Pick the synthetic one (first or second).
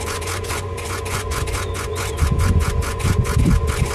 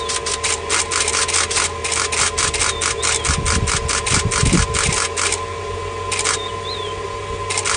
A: first